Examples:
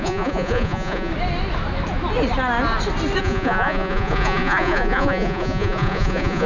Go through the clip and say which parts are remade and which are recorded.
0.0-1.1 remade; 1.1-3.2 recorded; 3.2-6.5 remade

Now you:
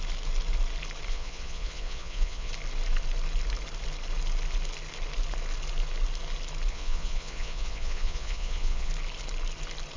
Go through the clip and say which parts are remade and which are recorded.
0.0-1.1 recorded; 1.1-2.5 remade; 2.5-6.7 recorded; 6.7-8.9 remade; 8.9-10.0 recorded

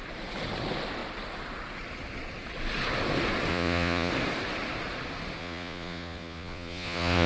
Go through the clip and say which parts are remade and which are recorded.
0.0-3.5 recorded; 3.5-4.1 remade; 4.1-5.4 recorded; 5.4-7.3 remade

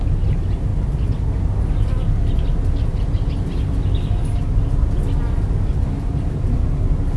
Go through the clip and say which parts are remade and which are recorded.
0.0-7.2 recorded